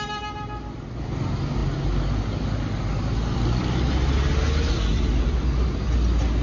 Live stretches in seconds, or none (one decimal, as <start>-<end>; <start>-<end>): 0.0-6.4